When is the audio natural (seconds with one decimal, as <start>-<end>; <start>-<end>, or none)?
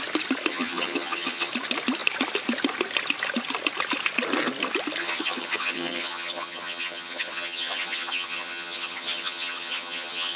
0.0-0.5; 1.5-5.0